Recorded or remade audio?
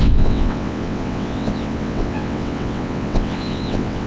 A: remade